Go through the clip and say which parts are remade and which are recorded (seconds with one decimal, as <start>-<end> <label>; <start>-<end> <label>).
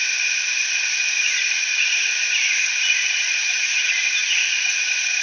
0.0-0.9 recorded; 0.9-2.0 remade; 2.0-2.6 recorded; 2.6-5.2 remade